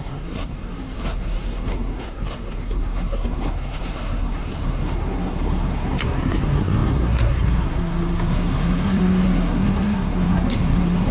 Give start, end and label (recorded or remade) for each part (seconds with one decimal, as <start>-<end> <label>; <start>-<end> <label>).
0.0-11.1 remade